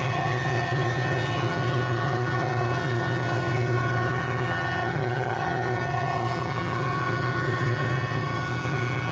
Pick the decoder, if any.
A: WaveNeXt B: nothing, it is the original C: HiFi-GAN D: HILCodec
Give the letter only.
C